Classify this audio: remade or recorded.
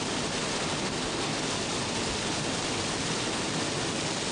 recorded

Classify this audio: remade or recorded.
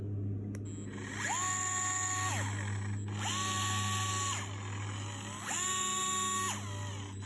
recorded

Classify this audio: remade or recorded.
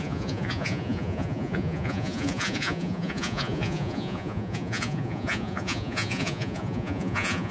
remade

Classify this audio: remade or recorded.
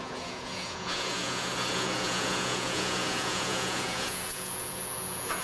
remade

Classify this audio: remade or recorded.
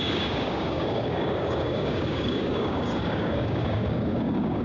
remade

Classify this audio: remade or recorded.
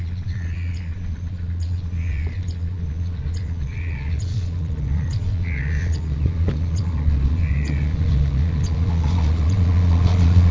remade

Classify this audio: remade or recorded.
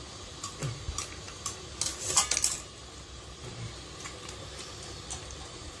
recorded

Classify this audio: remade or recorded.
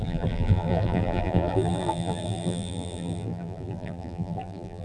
remade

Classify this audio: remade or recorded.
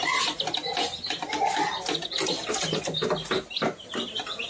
recorded